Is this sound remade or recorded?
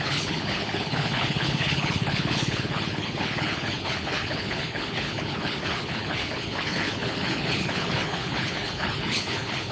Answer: remade